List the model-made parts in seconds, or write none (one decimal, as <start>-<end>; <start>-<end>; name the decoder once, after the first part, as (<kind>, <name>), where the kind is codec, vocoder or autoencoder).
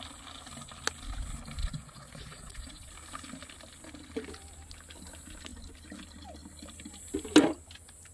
1.6-2.9 (vocoder, Vocos)